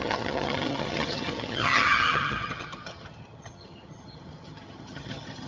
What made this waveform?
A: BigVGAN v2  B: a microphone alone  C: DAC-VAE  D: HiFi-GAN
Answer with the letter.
D